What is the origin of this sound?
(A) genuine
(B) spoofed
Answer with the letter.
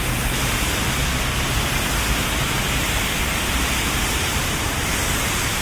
A